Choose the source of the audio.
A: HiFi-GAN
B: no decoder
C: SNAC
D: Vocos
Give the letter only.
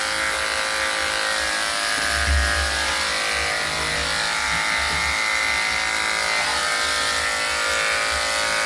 B